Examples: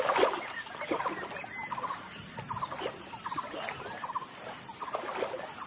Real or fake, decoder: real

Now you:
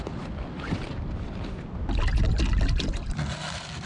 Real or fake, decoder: real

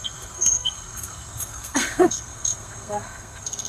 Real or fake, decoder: fake, codec, SNAC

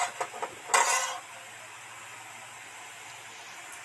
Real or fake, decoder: real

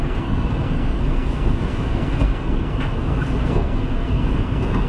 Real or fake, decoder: fake, codec, SNAC